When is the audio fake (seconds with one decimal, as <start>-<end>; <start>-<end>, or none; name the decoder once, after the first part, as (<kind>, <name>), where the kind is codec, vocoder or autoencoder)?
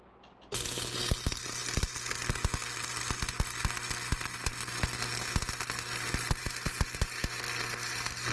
none